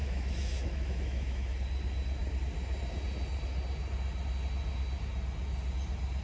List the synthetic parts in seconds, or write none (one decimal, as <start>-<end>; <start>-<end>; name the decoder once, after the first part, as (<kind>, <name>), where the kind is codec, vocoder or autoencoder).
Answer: 0.0-1.5 (autoencoder, DAC-VAE)